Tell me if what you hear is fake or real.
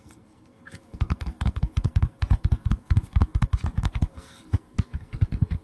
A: fake